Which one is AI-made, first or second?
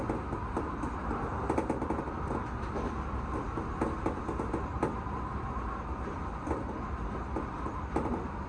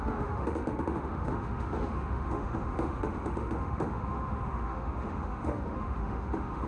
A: second